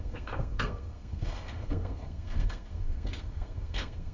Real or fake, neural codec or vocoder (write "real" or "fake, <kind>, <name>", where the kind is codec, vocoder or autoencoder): fake, codec, SNAC